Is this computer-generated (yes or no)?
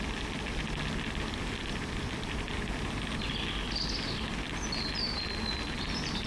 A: no